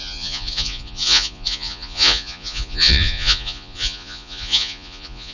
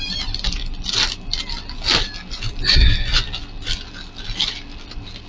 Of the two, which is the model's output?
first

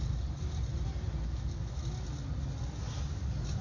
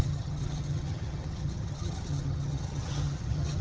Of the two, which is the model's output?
second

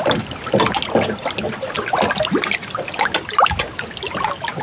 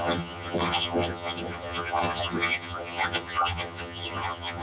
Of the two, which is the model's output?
second